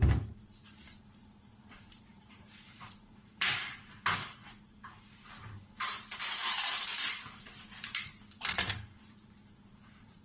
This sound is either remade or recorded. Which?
remade